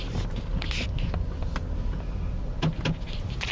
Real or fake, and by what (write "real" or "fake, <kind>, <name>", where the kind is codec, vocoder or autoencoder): real